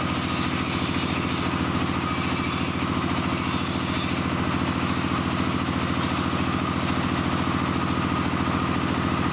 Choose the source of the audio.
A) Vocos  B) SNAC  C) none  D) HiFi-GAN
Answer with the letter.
C